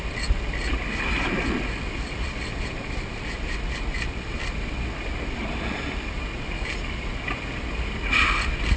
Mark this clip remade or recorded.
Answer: recorded